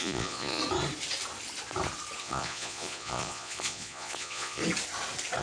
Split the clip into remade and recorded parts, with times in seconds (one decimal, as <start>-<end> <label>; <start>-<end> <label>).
0.0-0.6 remade; 0.6-2.2 recorded; 2.2-4.6 remade; 4.6-5.4 recorded